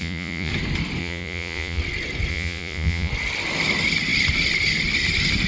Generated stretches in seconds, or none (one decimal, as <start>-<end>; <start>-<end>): 0.0-0.5; 1.0-1.8; 2.3-3.1

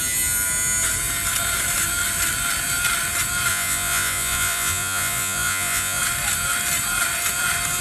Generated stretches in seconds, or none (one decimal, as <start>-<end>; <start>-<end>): 3.5-6.0